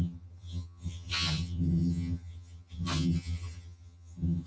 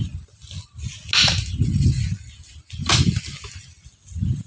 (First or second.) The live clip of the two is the second